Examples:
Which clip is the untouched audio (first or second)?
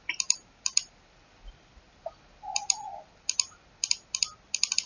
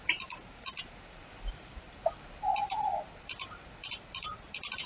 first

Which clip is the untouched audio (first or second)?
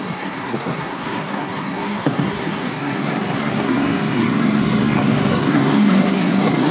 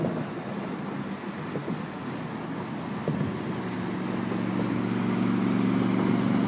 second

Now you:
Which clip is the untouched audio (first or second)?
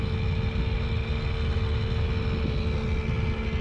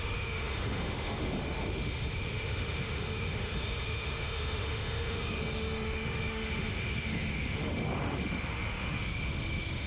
first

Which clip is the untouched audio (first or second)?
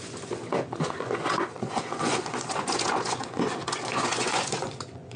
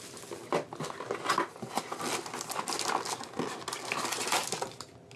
second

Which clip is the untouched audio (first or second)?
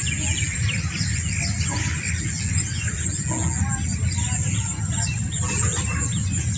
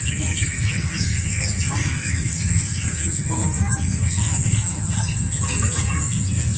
first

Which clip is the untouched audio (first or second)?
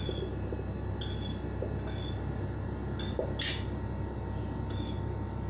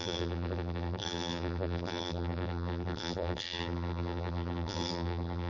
first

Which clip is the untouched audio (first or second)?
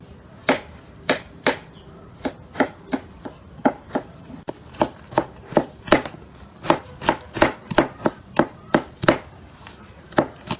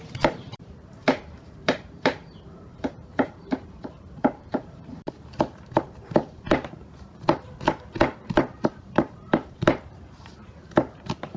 first